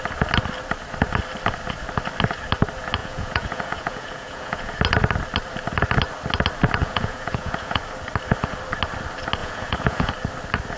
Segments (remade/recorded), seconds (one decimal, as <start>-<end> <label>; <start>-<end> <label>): 0.0-3.0 recorded; 3.0-4.7 remade; 4.7-6.8 recorded; 6.8-7.8 remade; 7.8-9.4 recorded; 9.4-10.1 remade; 10.1-10.8 recorded